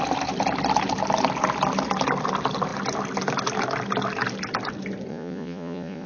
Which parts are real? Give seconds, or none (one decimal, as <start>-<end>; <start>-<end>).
0.0-5.1